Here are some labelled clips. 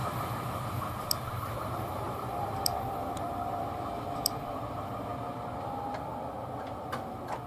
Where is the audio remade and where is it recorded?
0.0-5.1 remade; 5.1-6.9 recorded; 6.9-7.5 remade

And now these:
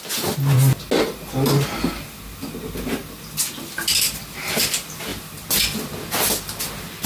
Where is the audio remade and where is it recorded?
0.0-7.1 recorded

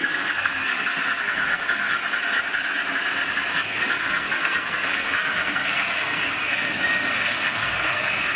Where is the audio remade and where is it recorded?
0.0-2.0 remade; 2.0-3.5 recorded; 3.5-8.4 remade

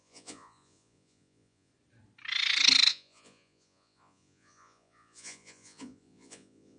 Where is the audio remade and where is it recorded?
0.0-1.7 remade; 1.7-2.9 recorded; 2.9-6.8 remade

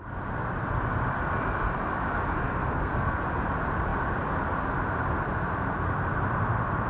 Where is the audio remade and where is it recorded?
0.0-2.5 recorded; 2.5-3.2 remade; 3.2-6.9 recorded

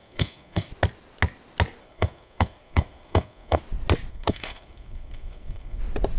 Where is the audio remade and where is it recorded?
0.0-0.7 remade; 0.7-1.8 recorded; 1.8-3.6 remade; 3.6-4.1 recorded; 4.1-5.8 remade; 5.8-6.2 recorded

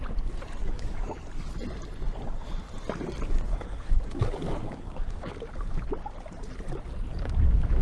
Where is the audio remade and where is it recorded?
0.0-0.6 recorded; 0.6-1.2 remade; 1.2-3.5 recorded; 3.5-5.3 remade; 5.3-7.1 recorded; 7.1-7.8 remade